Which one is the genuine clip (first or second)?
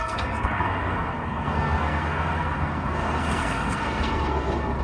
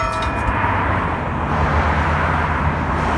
second